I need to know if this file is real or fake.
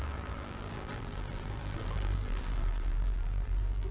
fake